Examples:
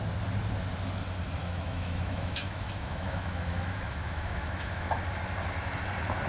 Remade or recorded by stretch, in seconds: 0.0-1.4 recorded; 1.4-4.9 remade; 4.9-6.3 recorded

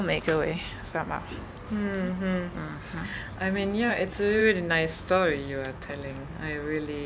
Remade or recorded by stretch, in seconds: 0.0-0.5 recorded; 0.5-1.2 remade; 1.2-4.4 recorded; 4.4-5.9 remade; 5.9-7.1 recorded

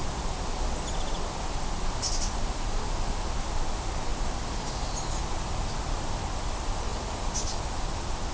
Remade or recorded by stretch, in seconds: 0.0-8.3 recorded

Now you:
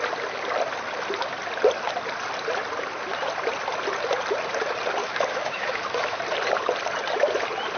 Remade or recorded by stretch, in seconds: 0.0-5.0 recorded; 5.0-6.2 remade; 6.2-7.8 recorded

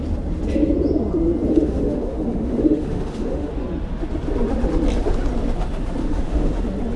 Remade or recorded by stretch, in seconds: 0.0-1.5 recorded; 1.5-3.5 remade; 3.5-6.0 recorded; 6.0-6.6 remade; 6.6-7.0 recorded